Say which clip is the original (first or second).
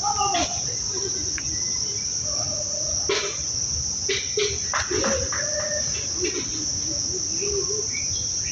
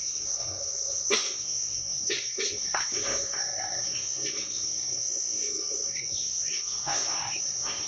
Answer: first